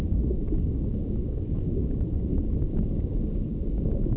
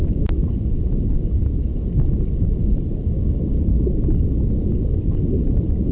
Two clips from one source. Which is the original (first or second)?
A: second